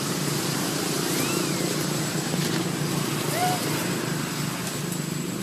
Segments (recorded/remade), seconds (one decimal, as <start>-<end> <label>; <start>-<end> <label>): 0.0-5.4 recorded

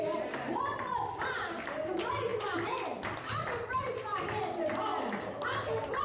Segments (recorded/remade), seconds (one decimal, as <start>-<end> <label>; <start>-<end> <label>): 0.0-4.9 remade; 4.9-6.0 recorded

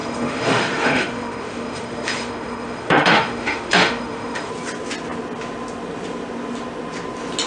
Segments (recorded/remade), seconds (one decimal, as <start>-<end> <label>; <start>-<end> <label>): 0.0-4.5 remade; 4.5-7.5 recorded

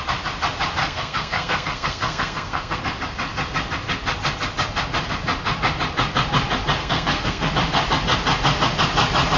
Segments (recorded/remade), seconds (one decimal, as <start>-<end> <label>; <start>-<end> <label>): 0.0-0.8 recorded; 0.8-2.8 remade; 2.8-6.8 recorded; 6.8-7.5 remade; 7.5-9.4 recorded

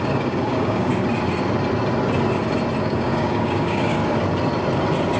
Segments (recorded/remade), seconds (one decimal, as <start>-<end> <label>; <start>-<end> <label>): 0.0-0.9 remade; 0.9-2.8 recorded; 2.8-4.0 remade; 4.0-5.2 recorded

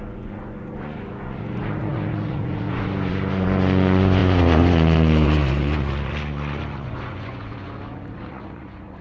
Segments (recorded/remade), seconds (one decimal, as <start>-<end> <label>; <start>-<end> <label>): 0.0-9.0 remade